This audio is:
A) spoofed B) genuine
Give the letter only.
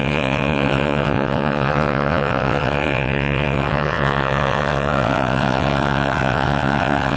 A